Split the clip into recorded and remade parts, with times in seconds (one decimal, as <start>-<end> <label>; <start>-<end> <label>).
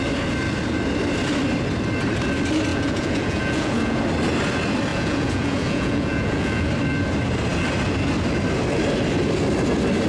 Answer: 0.0-2.7 recorded; 2.7-4.0 remade; 4.0-4.9 recorded; 4.9-6.7 remade; 6.7-10.1 recorded